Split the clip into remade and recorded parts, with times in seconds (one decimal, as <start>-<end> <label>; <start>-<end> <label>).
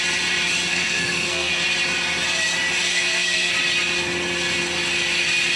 0.0-0.7 recorded; 0.7-1.5 remade; 1.5-2.9 recorded; 2.9-3.5 remade; 3.5-5.6 recorded